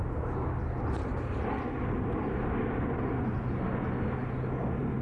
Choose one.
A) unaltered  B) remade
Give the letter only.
A